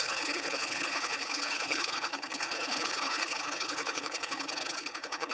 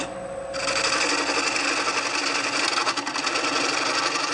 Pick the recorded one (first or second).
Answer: second